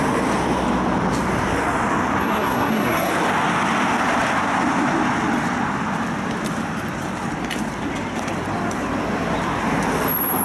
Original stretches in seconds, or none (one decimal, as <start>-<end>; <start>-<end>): 0.0-2.2; 3.1-10.4